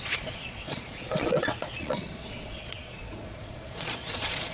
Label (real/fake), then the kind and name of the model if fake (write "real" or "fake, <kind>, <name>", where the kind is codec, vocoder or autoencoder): fake, vocoder, Vocos